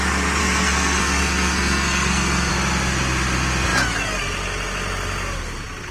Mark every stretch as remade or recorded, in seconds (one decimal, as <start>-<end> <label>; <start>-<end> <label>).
0.0-0.4 recorded; 0.4-2.5 remade; 2.5-5.9 recorded